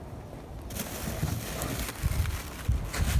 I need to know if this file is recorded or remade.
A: recorded